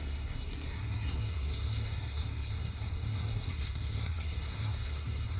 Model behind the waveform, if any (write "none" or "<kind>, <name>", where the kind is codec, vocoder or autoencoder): codec, SNAC